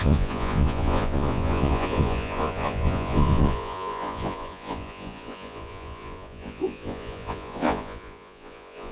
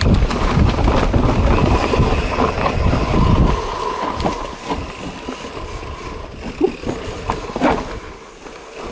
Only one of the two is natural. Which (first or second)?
second